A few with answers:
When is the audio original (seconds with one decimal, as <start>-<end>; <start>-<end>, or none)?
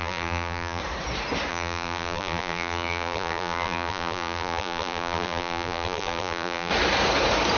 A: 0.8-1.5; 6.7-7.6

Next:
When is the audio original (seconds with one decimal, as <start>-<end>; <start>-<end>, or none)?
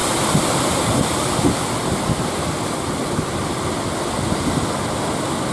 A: 1.6-5.5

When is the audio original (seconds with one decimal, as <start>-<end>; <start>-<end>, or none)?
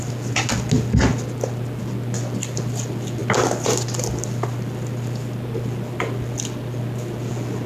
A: 0.0-7.7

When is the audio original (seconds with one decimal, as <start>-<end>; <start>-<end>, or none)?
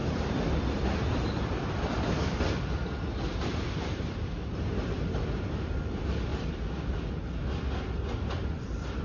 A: 2.8-3.9; 6.3-8.3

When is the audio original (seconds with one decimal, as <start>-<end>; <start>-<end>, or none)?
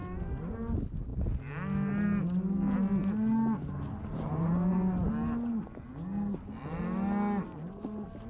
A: 0.0-8.3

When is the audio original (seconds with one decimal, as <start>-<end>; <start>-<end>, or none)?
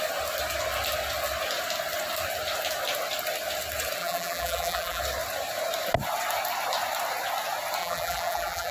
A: 0.0-4.0; 5.0-7.8